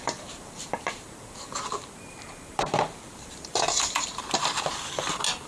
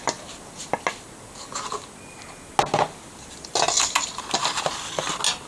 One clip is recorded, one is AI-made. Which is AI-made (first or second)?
first